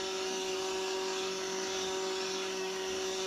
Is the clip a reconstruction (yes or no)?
yes